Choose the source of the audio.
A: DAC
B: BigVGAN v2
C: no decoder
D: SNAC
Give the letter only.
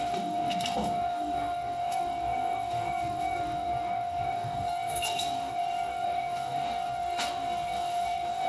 A